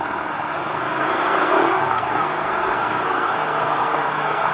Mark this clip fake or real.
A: fake